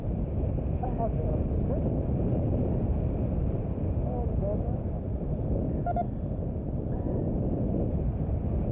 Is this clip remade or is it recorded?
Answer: recorded